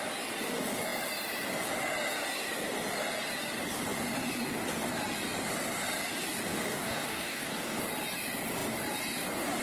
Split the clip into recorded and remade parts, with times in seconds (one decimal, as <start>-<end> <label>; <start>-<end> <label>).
0.0-6.5 recorded; 6.5-7.8 remade; 7.8-9.6 recorded